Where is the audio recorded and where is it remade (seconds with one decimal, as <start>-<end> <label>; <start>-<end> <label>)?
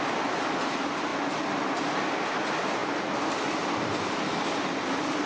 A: 0.0-5.3 recorded